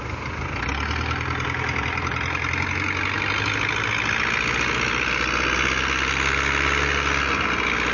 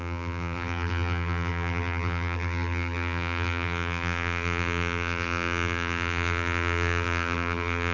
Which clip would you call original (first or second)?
first